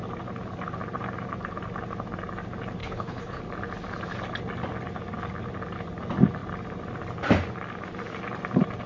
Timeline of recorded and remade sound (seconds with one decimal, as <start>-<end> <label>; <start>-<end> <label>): 0.0-2.8 recorded; 2.8-3.4 remade; 3.4-8.9 recorded